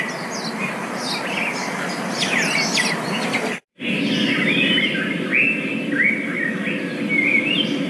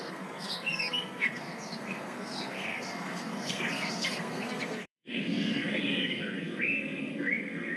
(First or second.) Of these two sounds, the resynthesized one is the second